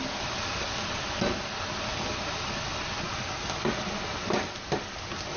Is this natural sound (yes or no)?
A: yes